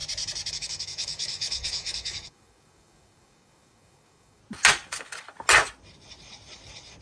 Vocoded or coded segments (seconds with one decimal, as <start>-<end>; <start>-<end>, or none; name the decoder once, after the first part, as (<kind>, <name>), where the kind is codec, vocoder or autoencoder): 0.5-4.4 (codec, DAC)